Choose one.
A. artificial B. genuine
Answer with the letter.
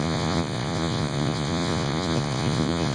A